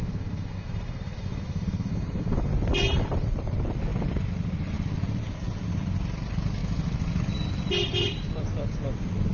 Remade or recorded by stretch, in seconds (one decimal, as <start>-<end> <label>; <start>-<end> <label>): 0.0-2.5 remade; 2.5-9.3 recorded